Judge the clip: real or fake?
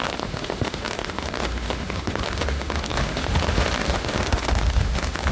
fake